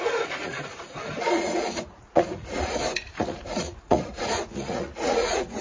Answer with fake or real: fake